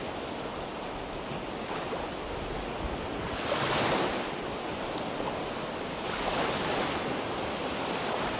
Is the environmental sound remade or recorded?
recorded